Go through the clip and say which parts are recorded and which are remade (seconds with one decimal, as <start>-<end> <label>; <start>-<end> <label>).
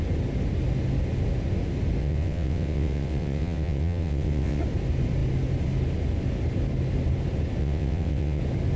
0.0-2.0 recorded; 2.0-4.6 remade; 4.6-7.6 recorded; 7.6-8.4 remade; 8.4-8.8 recorded